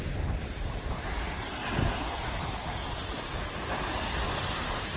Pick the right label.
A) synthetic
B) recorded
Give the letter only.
B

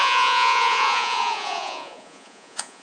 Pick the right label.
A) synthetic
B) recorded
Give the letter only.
A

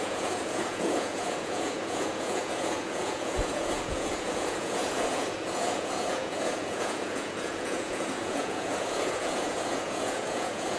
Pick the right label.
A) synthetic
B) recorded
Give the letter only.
A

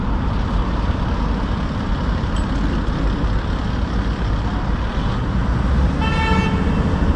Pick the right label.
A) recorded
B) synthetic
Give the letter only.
A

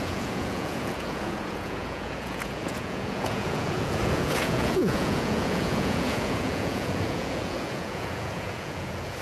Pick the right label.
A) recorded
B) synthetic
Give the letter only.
B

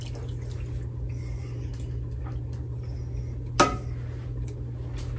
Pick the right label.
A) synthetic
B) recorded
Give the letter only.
B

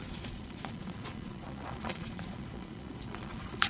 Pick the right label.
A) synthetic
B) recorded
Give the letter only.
A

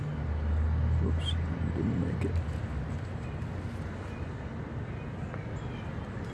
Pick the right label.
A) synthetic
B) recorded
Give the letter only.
B